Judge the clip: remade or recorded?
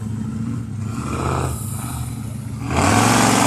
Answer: recorded